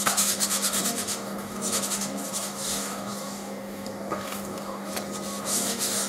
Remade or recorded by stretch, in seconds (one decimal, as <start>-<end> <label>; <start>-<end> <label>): 0.0-4.9 remade; 4.9-5.4 recorded; 5.4-6.1 remade